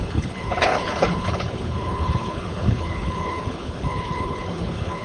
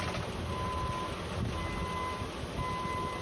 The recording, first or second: second